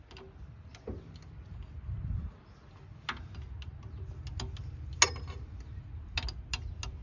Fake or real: real